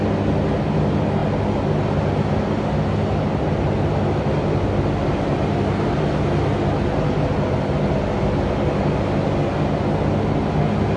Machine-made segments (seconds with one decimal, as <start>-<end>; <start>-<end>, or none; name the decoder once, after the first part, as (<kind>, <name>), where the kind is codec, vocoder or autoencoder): none

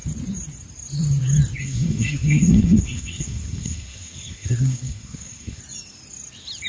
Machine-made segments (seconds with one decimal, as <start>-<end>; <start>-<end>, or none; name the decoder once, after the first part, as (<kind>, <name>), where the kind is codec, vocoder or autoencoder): 1.6-5.6 (codec, SNAC)

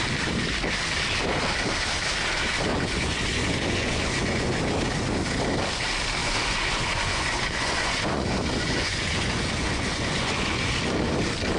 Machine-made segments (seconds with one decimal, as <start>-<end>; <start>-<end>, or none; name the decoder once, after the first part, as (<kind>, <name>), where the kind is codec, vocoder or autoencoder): 2.7-4.6 (vocoder, Vocos); 6.2-10.7

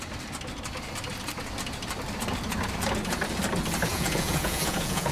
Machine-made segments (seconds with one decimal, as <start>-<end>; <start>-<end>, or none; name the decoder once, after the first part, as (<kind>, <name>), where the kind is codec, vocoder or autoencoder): 3.9-5.1 (vocoder, Vocos)

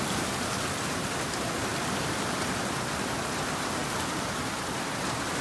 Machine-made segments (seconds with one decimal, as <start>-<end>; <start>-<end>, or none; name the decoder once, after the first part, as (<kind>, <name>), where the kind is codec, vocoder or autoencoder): 0.0-5.4 (vocoder, BigVGAN v2)

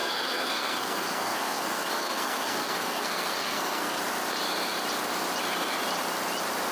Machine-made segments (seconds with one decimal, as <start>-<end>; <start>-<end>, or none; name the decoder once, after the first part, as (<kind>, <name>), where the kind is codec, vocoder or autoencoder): 0.0-4.0 (codec, SNAC)

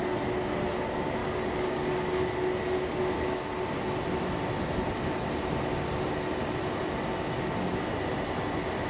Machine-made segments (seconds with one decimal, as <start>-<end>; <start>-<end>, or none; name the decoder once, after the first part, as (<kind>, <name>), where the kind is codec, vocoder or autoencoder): 1.2-2.2 (codec, DAC)

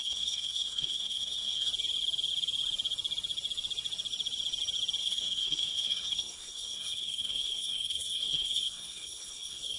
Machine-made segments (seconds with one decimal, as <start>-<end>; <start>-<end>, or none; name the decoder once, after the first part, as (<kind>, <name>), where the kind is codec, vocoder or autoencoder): 0.0-1.7 (codec, SNAC); 5.0-9.8